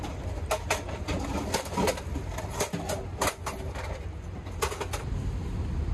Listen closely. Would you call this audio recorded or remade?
recorded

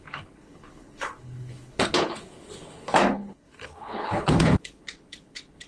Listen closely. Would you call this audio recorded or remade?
remade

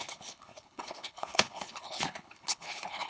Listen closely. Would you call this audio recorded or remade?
remade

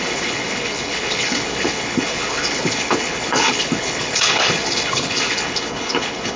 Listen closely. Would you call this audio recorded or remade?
remade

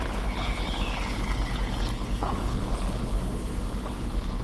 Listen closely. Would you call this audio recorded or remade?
remade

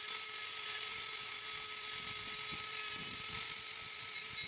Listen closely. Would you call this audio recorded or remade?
recorded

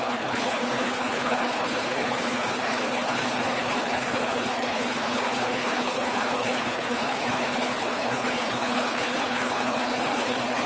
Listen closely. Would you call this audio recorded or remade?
remade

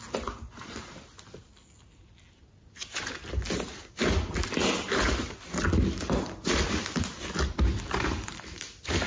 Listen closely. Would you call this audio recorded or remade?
recorded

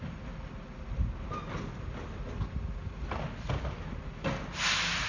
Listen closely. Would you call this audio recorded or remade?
recorded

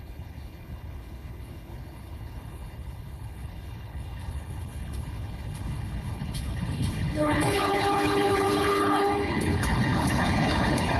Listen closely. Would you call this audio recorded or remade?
remade